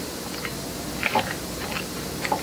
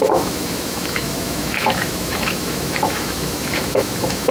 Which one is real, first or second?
first